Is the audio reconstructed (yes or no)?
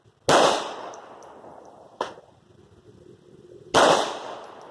no